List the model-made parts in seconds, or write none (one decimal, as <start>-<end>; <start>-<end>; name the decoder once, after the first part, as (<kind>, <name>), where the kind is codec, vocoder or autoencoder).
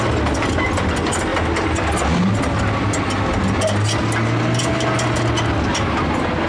none